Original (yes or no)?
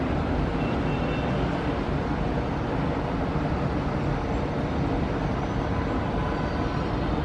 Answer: yes